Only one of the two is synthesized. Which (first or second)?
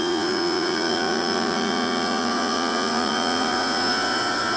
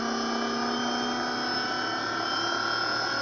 first